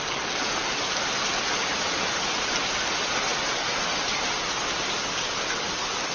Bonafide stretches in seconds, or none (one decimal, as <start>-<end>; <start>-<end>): 0.0-6.1

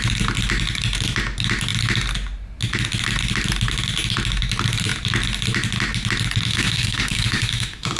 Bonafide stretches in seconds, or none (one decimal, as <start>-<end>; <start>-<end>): 0.0-6.5

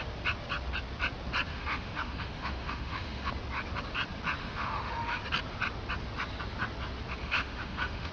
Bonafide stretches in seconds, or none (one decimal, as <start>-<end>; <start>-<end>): 0.0-1.5; 3.3-4.4; 5.2-7.2

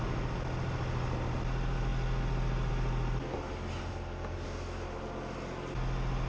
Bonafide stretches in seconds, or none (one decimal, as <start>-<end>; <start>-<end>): 0.0-6.3

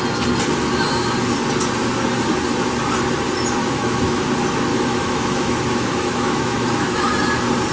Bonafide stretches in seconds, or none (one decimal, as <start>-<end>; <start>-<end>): 0.0-3.6; 4.3-4.7; 7.1-7.7

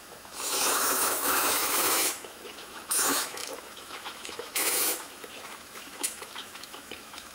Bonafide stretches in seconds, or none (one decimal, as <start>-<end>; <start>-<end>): none

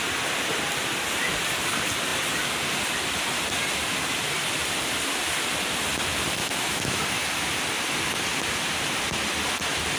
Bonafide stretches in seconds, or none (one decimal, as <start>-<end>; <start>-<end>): 0.0-6.4; 7.0-10.0